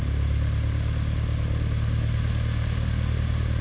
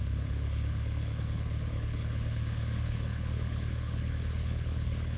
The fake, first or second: second